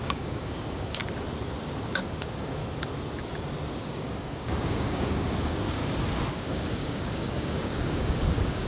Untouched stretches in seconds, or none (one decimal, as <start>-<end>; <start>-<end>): 1.0-1.8; 2.6-3.8; 5.8-6.3